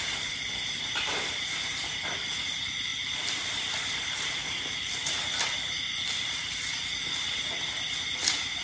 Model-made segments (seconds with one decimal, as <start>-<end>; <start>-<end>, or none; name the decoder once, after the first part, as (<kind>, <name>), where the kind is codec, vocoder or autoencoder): none